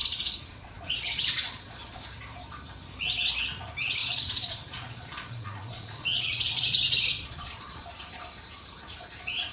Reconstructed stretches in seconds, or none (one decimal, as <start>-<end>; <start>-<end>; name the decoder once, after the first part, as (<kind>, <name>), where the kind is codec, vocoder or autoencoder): 0.0-2.0 (vocoder, Vocos); 4.0-7.9